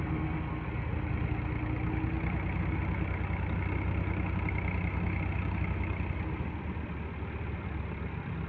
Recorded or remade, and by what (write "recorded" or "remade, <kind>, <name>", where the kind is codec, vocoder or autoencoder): recorded